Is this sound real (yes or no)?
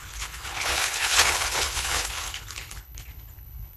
no